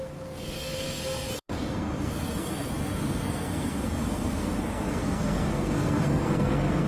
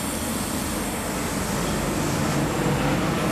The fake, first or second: first